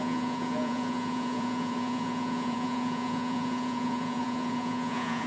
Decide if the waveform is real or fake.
fake